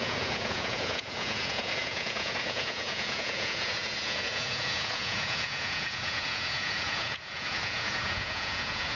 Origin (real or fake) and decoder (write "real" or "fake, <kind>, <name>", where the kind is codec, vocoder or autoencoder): fake, vocoder, Vocos